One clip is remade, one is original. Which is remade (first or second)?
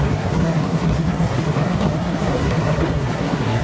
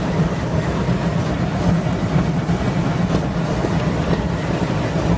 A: first